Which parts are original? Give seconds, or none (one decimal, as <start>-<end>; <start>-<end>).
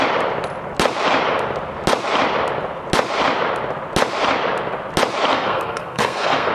0.0-5.3